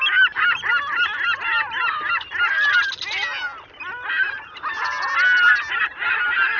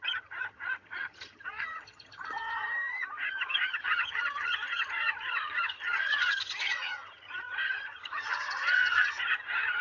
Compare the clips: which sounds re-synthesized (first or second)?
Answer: second